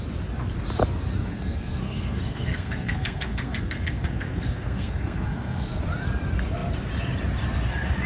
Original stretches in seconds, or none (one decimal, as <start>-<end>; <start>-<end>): 0.0-1.2; 5.8-8.1